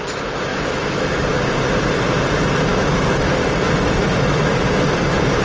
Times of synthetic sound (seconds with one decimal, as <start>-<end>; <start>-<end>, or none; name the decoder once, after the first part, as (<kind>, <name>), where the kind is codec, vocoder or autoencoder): 0.5-1.1 (autoencoder, DAC-VAE); 2.7-4.5